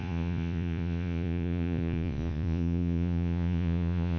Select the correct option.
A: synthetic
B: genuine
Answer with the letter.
A